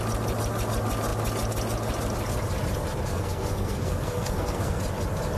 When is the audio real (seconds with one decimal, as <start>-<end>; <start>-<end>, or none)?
0.0-3.1; 4.8-5.4